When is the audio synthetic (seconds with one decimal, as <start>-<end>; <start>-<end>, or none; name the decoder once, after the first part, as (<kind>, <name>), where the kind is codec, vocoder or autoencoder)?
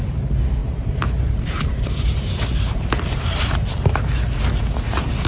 0.6-3.5 (vocoder, BigVGAN v2)